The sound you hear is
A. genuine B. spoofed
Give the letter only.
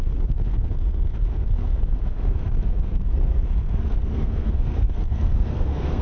B